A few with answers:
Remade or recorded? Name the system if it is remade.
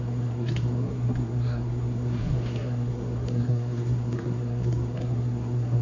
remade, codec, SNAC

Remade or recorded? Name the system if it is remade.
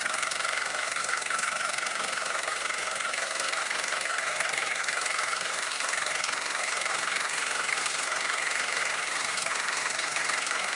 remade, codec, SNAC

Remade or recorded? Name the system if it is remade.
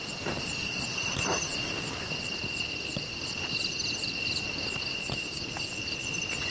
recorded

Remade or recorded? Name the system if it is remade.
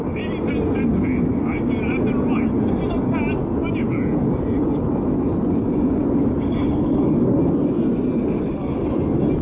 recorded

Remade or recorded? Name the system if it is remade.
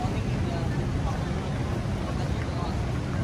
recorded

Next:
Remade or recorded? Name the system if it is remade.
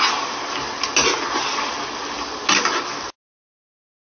recorded